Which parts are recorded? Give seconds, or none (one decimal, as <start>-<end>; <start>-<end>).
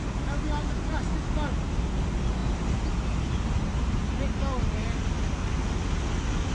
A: 0.0-6.5